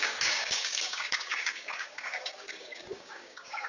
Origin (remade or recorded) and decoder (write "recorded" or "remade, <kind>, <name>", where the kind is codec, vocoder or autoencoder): remade, codec, DAC